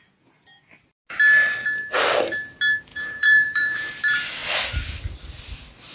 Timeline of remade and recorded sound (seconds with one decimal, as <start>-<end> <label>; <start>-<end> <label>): 0.0-2.9 recorded; 2.9-3.9 remade; 3.9-5.9 recorded